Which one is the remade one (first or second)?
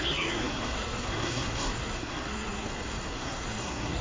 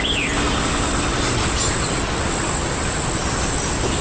first